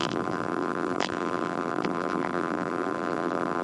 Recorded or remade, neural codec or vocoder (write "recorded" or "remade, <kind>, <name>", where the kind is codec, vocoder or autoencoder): remade, vocoder, BigVGAN v2